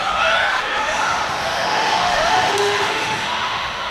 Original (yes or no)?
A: no